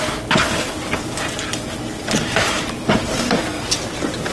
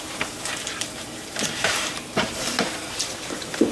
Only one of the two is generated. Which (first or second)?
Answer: second